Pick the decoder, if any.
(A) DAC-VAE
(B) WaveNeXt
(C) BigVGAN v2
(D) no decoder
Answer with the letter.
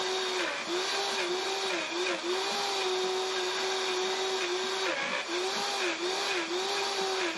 D